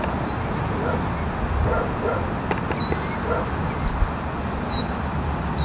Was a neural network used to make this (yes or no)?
no